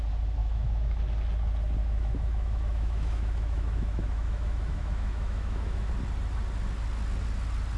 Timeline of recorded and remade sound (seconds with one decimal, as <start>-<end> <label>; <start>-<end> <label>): 0.0-0.4 recorded; 0.4-1.0 remade; 1.0-1.8 recorded; 1.8-5.9 remade; 5.9-7.8 recorded